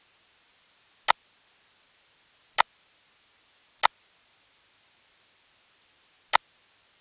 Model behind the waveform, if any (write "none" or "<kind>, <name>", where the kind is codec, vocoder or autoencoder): none